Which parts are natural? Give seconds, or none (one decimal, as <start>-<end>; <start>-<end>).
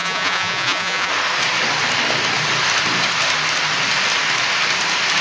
1.1-5.2